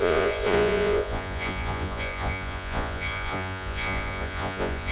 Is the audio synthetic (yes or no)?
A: yes